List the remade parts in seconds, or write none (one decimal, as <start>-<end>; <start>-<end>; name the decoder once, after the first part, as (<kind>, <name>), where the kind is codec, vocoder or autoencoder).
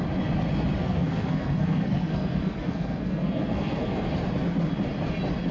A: 0.8-4.1 (codec, SNAC)